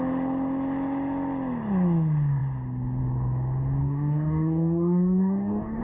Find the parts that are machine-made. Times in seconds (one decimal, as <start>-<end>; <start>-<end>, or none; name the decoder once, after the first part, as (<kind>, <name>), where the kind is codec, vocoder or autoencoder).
3.8-5.8 (codec, DAC)